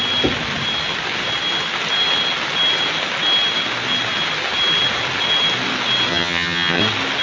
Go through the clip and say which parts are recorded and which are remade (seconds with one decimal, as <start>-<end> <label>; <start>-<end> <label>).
0.0-6.1 recorded; 6.1-6.8 remade; 6.8-7.2 recorded

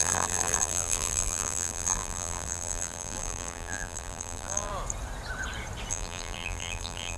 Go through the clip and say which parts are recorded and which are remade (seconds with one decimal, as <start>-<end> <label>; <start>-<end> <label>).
0.0-4.7 remade; 4.7-5.9 recorded; 5.9-7.2 remade

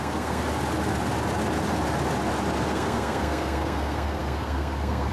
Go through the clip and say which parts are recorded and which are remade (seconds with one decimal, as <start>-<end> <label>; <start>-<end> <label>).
0.0-0.4 remade; 0.4-2.7 recorded; 2.7-5.1 remade

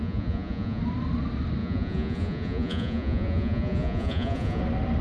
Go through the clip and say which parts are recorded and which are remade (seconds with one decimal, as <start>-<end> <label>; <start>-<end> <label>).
0.0-0.8 remade; 0.8-1.6 recorded; 1.6-4.6 remade; 4.6-5.0 recorded

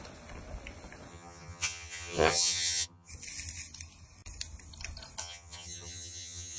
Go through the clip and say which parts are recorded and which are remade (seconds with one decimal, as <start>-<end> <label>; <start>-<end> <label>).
0.0-1.1 recorded; 1.1-3.1 remade; 3.1-5.2 recorded; 5.2-6.6 remade

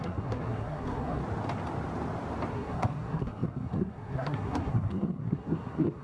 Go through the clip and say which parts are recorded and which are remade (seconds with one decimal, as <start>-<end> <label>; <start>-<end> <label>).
0.0-1.2 remade; 1.2-2.5 recorded; 2.5-6.0 remade

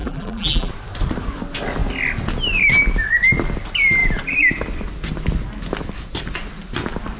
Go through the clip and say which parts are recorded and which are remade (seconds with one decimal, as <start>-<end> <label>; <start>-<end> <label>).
0.0-0.7 remade; 0.7-7.2 recorded

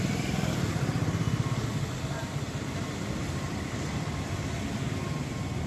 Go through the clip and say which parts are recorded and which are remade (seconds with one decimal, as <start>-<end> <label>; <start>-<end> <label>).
0.0-0.7 recorded; 0.7-1.5 remade; 1.5-2.2 recorded; 2.2-4.7 remade; 4.7-5.7 recorded